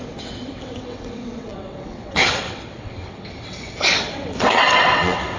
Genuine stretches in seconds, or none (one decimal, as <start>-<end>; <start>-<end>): none